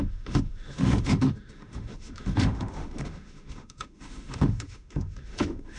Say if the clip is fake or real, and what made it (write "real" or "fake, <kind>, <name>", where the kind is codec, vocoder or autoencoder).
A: fake, autoencoder, DAC-VAE